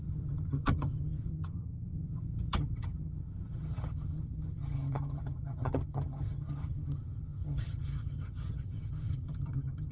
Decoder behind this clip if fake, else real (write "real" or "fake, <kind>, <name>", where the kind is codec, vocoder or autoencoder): fake, vocoder, HiFi-GAN